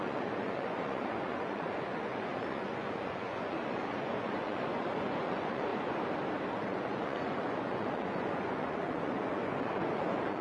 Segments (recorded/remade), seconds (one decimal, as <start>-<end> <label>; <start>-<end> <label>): 0.0-5.7 remade; 5.7-6.5 recorded; 6.5-10.4 remade